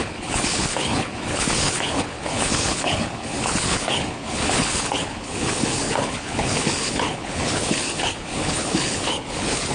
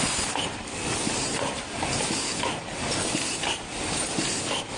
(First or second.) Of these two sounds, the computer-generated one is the first